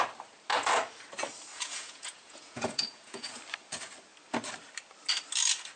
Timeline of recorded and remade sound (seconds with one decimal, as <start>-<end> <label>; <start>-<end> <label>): 0.0-1.5 recorded; 1.5-3.4 remade; 3.4-5.8 recorded